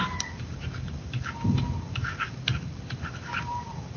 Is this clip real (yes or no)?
no